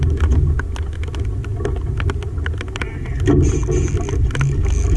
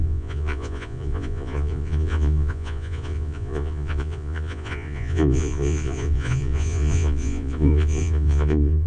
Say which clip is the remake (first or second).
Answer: second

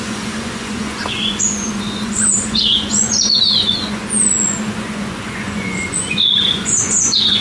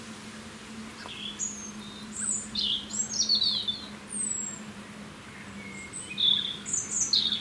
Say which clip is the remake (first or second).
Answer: first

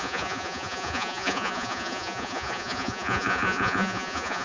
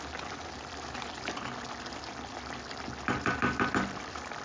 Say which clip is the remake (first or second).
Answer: first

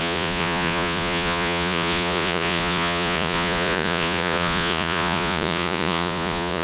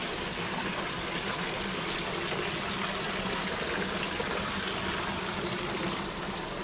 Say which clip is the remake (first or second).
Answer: first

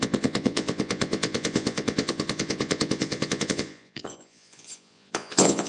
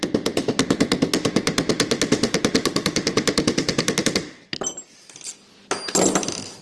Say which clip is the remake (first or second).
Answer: first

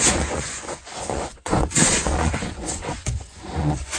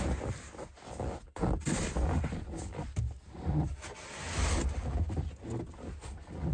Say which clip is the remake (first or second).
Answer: first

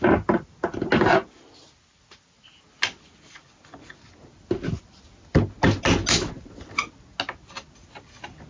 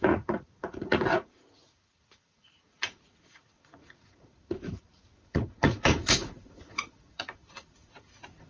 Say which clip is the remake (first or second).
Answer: second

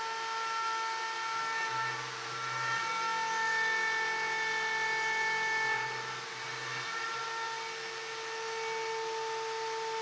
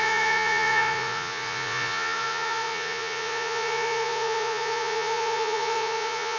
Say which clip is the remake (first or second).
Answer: second